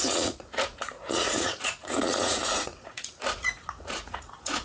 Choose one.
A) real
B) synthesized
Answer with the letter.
B